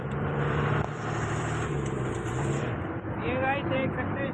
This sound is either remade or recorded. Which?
remade